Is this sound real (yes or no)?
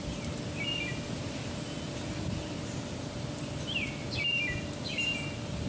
yes